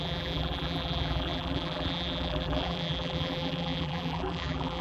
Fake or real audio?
fake